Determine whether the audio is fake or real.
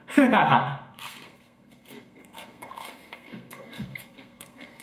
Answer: fake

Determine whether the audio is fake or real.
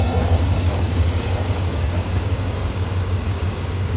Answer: fake